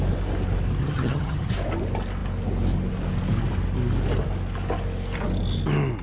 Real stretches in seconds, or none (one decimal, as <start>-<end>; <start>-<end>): 0.0-0.8; 1.5-6.0